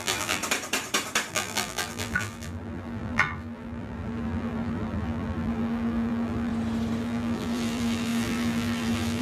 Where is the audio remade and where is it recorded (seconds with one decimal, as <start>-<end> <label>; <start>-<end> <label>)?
0.0-0.4 remade; 0.4-1.3 recorded; 1.3-6.5 remade; 6.5-7.0 recorded; 7.0-9.2 remade